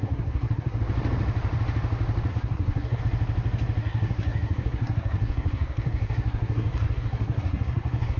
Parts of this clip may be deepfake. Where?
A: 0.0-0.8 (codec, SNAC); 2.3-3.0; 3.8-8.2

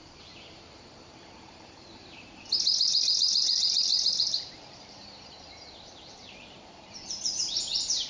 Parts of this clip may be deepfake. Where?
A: 0.0-2.5 (vocoder, BigVGAN v2); 3.0-8.1

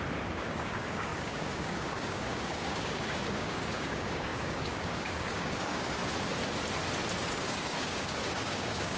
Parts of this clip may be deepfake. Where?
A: 0.0-6.0 (codec, DAC); 7.3-9.0

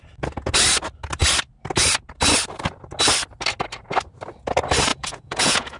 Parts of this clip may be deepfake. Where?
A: 4.9-5.8 (vocoder, Vocos)

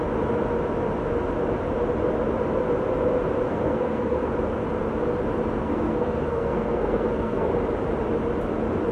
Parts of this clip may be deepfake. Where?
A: 3.5-4.3 (codec, SNAC); 5.6-7.5